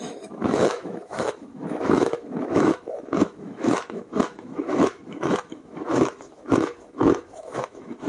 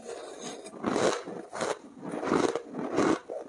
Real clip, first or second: second